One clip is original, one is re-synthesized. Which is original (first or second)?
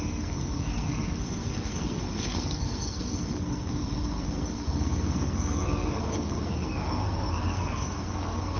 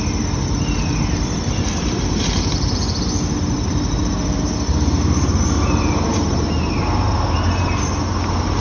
second